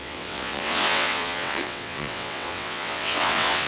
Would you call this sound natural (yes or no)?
no